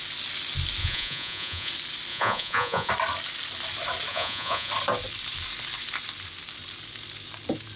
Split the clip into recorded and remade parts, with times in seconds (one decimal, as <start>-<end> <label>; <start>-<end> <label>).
0.0-0.8 recorded; 0.8-1.7 remade; 1.7-2.1 recorded; 2.1-2.9 remade; 2.9-4.1 recorded; 4.1-4.7 remade; 4.7-7.8 recorded